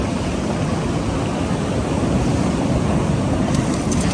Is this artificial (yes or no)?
no